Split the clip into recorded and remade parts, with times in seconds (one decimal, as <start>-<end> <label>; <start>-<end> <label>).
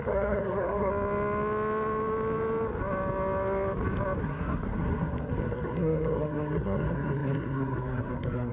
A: 0.0-0.9 remade; 0.9-4.2 recorded; 4.2-8.5 remade